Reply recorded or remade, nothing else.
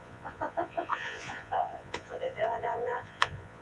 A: remade